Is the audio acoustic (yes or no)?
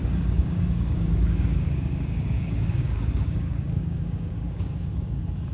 no